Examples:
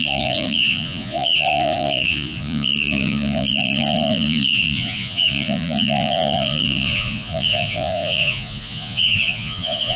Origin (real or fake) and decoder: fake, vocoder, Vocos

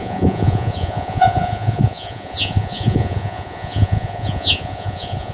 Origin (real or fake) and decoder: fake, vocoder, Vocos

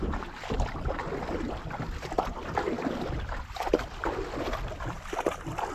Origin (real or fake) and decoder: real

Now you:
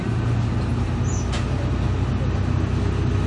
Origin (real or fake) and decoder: real